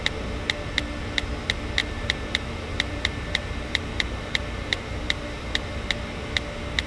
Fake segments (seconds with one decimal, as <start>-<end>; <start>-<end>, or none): 1.8-5.9